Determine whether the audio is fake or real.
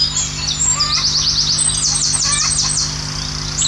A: real